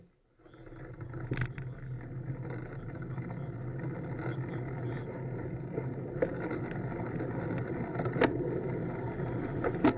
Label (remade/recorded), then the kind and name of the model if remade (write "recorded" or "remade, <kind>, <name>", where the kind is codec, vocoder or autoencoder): recorded